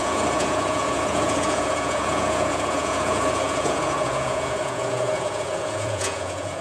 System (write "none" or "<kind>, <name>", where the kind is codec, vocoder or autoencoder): vocoder, Vocos